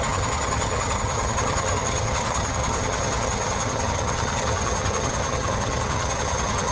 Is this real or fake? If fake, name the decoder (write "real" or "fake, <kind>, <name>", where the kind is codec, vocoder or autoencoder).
fake, vocoder, HiFi-GAN